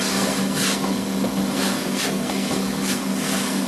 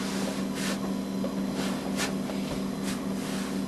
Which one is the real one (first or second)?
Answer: second